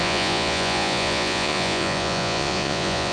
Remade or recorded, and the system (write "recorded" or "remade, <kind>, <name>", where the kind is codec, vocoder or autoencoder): remade, vocoder, Vocos